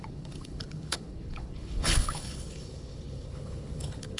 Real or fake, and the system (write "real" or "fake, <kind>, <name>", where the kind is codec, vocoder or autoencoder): fake, codec, HILCodec